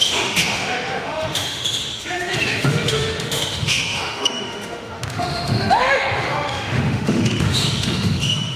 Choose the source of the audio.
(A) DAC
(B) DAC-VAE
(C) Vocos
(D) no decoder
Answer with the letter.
B